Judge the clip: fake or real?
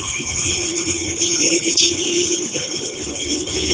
fake